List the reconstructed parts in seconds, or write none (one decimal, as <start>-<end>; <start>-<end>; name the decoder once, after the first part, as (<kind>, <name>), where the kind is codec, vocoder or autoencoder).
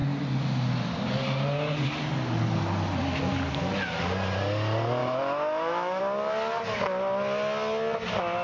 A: 5.0-6.0 (autoencoder, DAC-VAE)